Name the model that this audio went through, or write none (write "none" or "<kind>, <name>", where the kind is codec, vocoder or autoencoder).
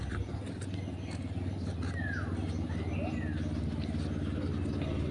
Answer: none